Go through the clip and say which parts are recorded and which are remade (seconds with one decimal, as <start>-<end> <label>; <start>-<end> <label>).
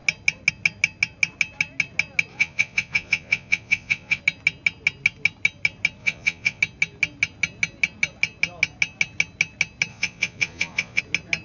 0.0-2.3 recorded; 2.3-4.2 remade; 4.2-6.0 recorded; 6.0-6.6 remade; 6.6-9.9 recorded; 9.9-11.0 remade; 11.0-11.4 recorded